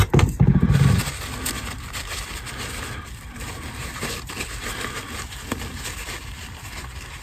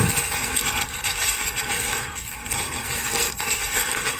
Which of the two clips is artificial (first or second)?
second